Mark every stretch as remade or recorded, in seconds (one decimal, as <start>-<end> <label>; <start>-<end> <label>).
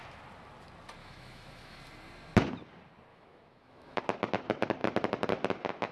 0.0-1.0 recorded; 1.0-1.8 remade; 1.8-3.1 recorded; 3.1-4.0 remade; 4.0-5.9 recorded